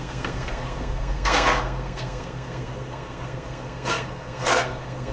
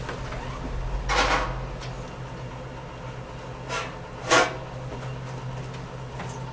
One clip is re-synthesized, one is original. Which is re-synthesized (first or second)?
first